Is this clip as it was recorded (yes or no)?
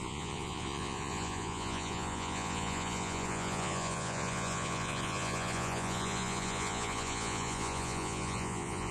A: no